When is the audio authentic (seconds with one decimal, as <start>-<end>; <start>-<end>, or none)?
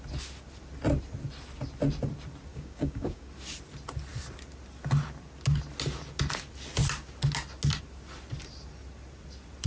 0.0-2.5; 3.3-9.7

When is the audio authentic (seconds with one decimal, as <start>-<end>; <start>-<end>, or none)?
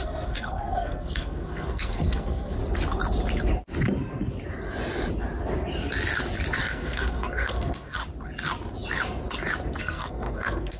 2.6-6.6; 8.0-9.8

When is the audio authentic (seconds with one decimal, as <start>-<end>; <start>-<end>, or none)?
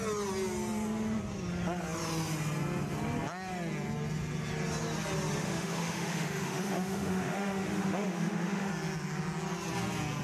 0.0-5.4; 8.7-10.2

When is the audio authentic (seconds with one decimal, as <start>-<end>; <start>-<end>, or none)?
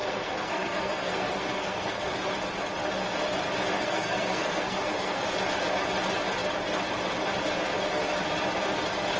2.1-3.7; 5.3-9.2